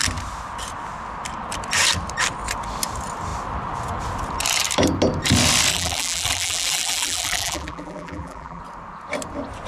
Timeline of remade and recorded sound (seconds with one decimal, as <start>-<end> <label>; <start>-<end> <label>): 0.0-5.7 recorded; 5.7-8.6 remade; 8.6-9.7 recorded